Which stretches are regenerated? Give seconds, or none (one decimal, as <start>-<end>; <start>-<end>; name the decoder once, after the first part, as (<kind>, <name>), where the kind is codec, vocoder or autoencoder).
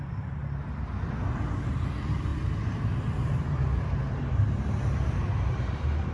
0.0-0.4 (vocoder, BigVGAN v2); 1.3-6.1